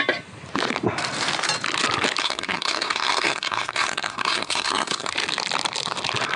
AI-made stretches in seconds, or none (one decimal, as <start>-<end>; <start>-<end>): 2.2-5.1